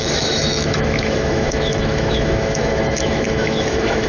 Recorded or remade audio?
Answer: remade